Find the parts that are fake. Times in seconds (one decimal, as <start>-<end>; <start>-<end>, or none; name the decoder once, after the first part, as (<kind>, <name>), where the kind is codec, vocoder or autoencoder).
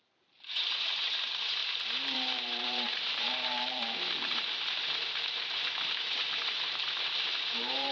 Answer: 0.0-7.9 (vocoder, BigVGAN v2)